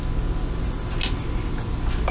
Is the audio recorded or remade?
recorded